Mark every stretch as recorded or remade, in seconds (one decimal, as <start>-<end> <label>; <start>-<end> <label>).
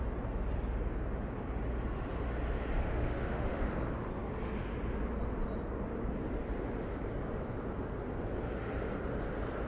0.0-2.8 recorded; 2.8-3.7 remade; 3.7-9.7 recorded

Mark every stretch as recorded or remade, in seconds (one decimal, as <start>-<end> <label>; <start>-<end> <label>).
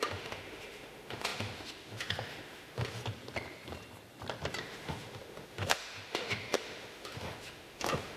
0.0-3.0 remade; 3.0-4.6 recorded; 4.6-8.2 remade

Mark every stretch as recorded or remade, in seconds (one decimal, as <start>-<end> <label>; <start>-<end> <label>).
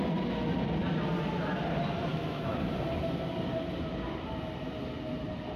0.0-2.1 recorded; 2.1-2.6 remade; 2.6-5.6 recorded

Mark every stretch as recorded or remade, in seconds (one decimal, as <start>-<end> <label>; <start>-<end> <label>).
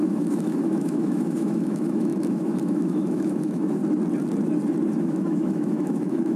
0.0-3.8 remade; 3.8-5.0 recorded; 5.0-6.4 remade